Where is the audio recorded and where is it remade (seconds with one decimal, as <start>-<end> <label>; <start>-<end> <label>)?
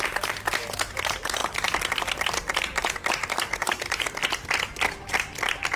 0.0-1.4 remade; 1.4-3.1 recorded; 3.1-4.2 remade; 4.2-5.8 recorded